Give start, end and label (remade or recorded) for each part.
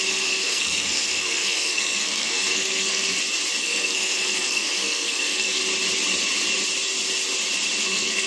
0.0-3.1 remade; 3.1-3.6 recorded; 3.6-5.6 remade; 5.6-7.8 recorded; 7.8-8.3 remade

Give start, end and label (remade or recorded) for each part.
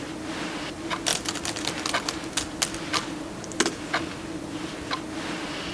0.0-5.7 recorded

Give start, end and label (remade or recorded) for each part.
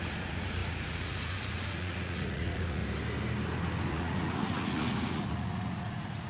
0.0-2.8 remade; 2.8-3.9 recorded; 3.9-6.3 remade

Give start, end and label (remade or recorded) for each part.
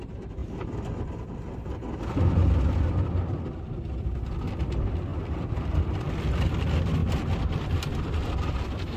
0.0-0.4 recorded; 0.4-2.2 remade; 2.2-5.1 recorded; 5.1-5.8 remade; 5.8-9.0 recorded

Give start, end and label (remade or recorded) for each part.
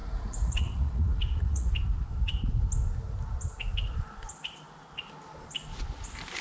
0.0-1.7 remade; 1.7-6.4 recorded